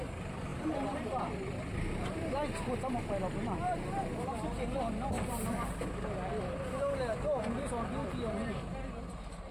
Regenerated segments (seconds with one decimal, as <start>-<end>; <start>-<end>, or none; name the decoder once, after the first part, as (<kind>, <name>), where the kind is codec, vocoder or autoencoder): none